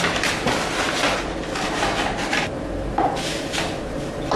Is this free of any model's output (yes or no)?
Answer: yes